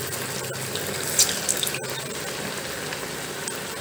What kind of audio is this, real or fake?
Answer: real